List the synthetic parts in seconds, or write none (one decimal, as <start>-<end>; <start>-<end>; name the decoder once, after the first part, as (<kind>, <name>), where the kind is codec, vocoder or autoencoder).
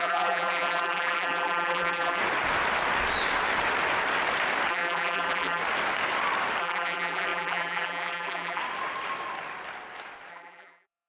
0.0-2.2 (vocoder, BigVGAN v2); 4.7-5.6; 6.6-8.6; 10.3-11.1